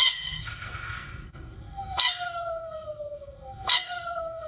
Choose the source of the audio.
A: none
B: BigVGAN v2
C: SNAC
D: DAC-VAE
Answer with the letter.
C